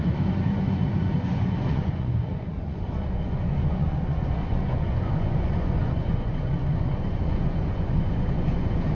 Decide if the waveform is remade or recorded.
remade